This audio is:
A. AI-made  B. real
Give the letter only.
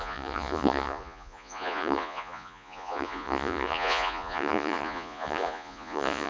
A